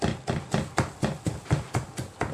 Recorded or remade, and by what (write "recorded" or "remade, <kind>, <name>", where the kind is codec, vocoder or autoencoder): recorded